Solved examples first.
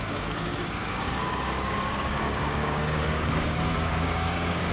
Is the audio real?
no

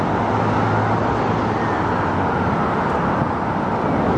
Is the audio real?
yes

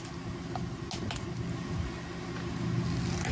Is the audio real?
yes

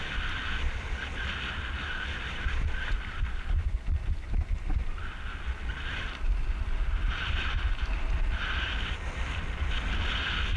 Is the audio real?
yes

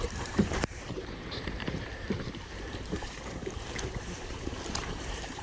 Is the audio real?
no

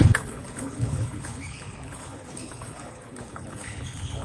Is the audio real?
no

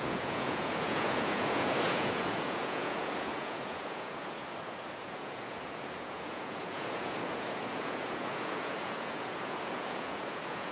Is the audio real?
no